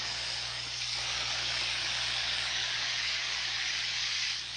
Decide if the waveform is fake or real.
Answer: fake